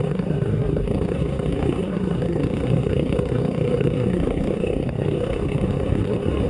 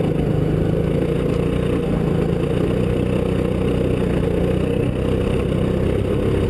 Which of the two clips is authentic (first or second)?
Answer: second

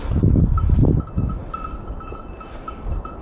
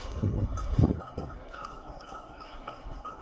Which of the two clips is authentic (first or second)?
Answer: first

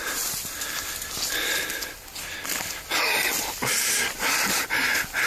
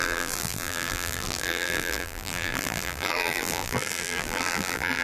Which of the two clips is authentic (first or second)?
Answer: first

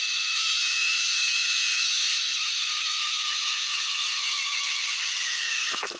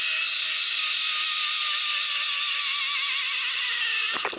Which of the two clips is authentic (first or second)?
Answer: second